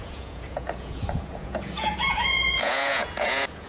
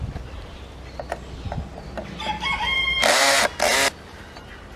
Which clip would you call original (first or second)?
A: second